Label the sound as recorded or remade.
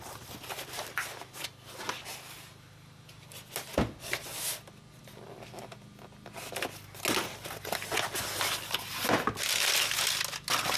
recorded